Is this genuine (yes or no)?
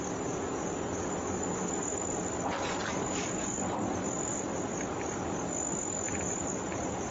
yes